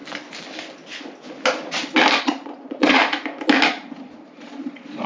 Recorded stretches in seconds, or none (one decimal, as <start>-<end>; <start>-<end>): 0.0-2.2; 3.0-3.7

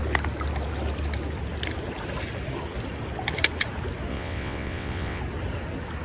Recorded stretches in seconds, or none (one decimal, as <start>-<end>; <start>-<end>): 0.0-4.1; 5.2-6.0

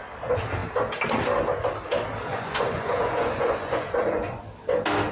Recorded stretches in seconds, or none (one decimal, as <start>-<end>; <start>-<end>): 0.0-2.3; 4.4-5.1